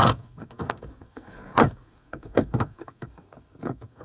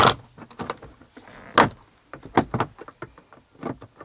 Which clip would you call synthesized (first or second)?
first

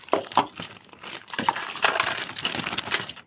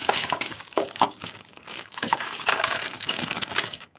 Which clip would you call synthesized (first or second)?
second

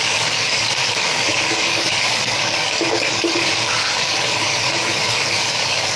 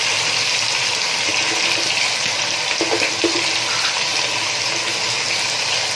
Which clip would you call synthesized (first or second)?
first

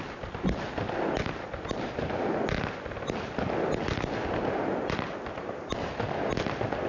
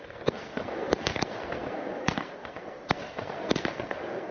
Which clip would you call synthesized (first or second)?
second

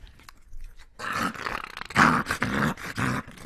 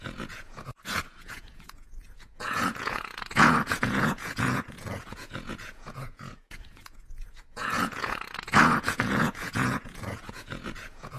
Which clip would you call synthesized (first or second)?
second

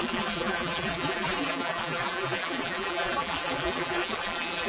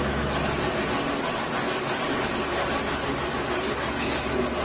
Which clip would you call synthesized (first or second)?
first